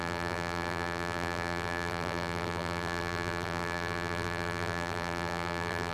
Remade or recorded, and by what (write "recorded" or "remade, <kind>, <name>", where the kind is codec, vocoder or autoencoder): remade, vocoder, BigVGAN v2